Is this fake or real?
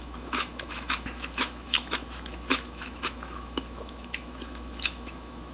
fake